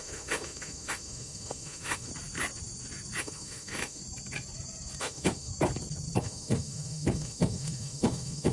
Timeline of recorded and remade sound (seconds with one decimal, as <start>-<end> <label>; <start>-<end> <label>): 0.0-2.1 remade; 2.1-3.2 recorded; 3.2-4.0 remade; 4.0-5.0 recorded; 5.0-5.5 remade; 5.5-6.2 recorded; 6.2-8.5 remade